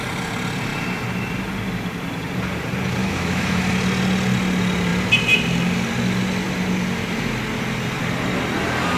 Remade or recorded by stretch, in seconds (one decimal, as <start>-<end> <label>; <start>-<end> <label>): 0.0-3.0 recorded; 3.0-3.6 remade; 3.6-9.0 recorded